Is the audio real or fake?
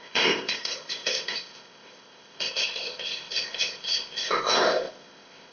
fake